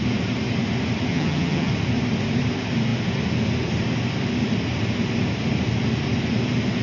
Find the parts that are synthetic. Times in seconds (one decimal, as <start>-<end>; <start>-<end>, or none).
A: 1.1-1.7